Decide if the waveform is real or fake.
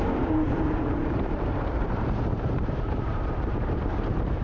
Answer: fake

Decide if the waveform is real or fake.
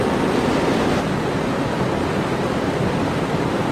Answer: real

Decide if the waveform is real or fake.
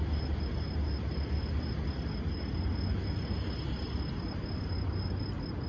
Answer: real